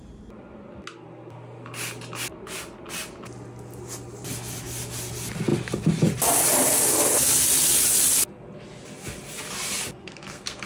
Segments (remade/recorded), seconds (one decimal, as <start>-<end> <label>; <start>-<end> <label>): 0.0-10.0 recorded; 10.0-10.7 remade